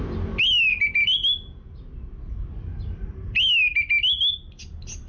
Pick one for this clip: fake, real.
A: real